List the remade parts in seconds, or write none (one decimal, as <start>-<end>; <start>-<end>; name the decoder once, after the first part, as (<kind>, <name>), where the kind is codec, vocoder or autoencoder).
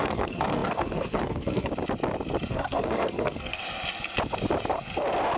0.0-1.7 (codec, SNAC); 2.5-3.6